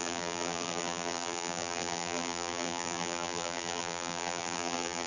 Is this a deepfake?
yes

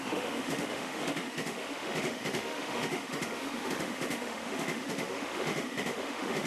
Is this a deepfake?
yes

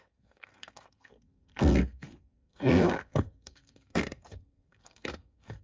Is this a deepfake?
yes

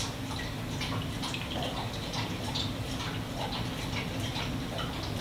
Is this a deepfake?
no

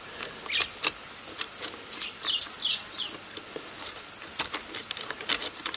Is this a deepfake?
no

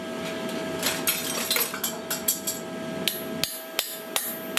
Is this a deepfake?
no